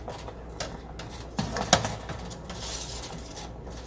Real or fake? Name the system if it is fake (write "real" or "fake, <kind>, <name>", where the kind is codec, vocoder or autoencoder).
real